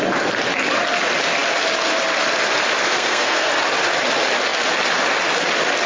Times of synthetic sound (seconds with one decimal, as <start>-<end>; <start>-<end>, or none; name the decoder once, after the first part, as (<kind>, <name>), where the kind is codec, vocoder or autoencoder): 2.8-3.5 (codec, SNAC)